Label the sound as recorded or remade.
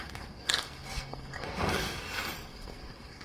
remade